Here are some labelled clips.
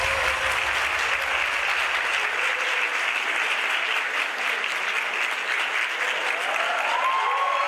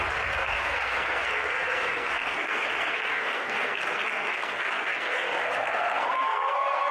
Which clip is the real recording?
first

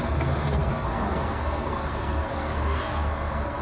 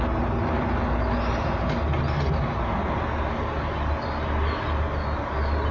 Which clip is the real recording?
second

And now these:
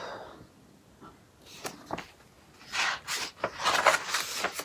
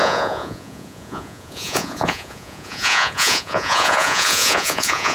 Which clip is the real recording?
first